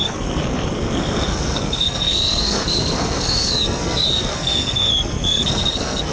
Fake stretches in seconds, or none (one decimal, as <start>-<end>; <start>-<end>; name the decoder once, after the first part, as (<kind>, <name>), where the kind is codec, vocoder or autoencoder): 0.0-6.1 (codec, SNAC)